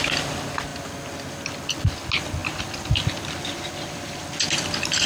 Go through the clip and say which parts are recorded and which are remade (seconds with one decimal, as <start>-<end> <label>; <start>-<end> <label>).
0.0-2.4 recorded; 2.4-3.1 remade; 3.1-5.1 recorded